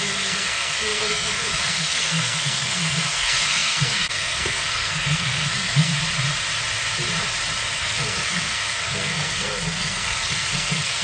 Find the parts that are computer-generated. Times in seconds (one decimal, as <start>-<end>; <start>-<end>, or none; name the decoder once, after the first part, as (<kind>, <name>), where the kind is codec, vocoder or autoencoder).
0.0-5.9 (codec, SNAC); 7.8-11.0